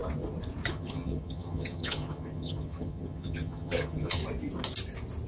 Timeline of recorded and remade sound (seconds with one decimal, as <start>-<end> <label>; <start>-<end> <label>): 0.0-0.7 recorded; 0.7-4.2 remade; 4.2-5.3 recorded